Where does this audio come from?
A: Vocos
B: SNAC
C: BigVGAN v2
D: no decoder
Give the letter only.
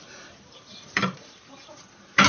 C